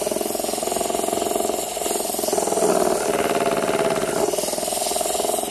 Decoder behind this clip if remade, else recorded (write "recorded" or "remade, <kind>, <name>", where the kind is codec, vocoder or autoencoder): recorded